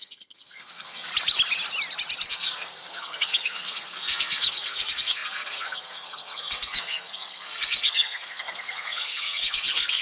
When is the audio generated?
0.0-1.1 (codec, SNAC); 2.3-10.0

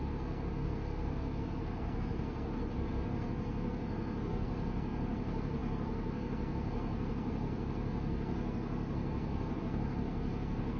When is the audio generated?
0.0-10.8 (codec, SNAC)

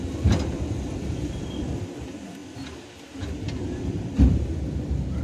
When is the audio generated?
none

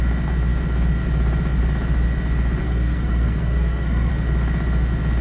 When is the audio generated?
2.6-4.1 (codec, SNAC)

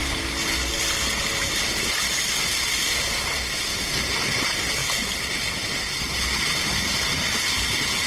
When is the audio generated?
none

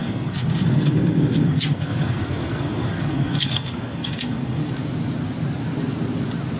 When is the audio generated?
0.0-4.6 (codec, SNAC)

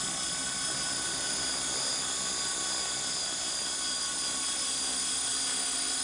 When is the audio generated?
none

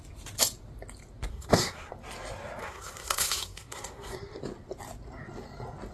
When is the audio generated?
1.3-1.9 (codec, SNAC); 2.6-4.4